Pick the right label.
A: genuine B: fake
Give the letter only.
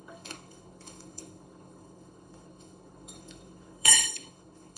B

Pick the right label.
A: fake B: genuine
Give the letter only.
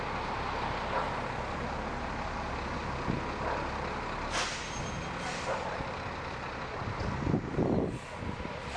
B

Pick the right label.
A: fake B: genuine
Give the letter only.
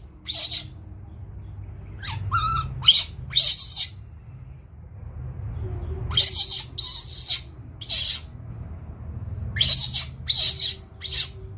B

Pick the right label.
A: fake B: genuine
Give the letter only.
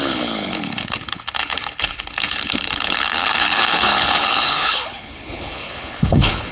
A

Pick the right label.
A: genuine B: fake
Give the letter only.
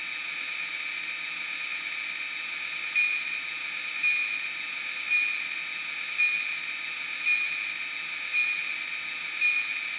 A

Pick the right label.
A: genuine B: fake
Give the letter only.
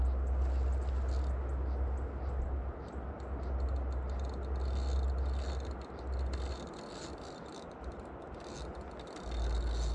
A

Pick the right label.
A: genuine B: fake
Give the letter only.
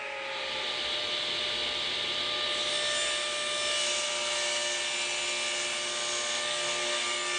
A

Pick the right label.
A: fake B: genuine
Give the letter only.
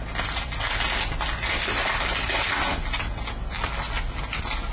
B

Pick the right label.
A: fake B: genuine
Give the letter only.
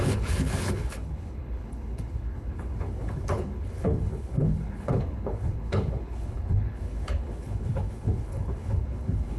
A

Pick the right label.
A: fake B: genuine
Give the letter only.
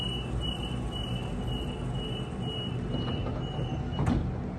B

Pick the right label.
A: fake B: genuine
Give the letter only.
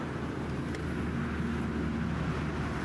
B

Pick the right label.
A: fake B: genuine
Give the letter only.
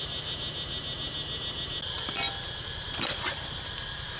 B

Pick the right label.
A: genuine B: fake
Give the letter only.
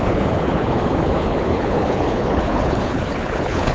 B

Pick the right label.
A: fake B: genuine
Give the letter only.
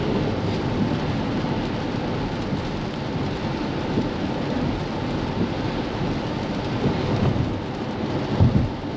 B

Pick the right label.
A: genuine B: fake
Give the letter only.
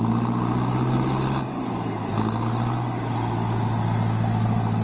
A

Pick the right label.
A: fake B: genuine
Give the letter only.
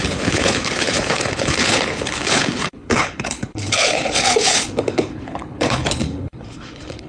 A